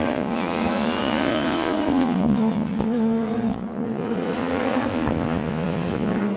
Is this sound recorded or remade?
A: remade